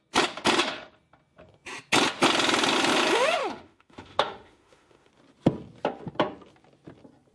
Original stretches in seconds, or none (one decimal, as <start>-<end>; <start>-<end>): 0.0-3.4; 5.1-7.3